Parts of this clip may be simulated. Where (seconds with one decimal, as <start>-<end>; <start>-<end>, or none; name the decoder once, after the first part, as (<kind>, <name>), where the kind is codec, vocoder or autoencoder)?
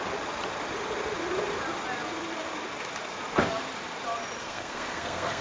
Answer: 4.4-5.4 (codec, SNAC)